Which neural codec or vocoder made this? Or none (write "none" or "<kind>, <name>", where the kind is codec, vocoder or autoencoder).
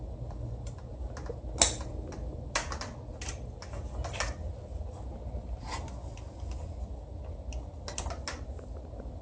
none